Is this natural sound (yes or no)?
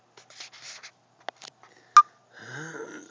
yes